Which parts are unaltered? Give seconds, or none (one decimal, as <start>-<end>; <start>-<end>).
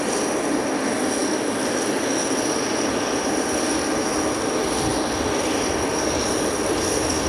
0.0-7.3